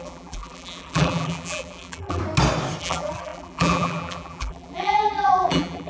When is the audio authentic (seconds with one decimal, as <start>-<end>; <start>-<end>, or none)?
2.2-2.8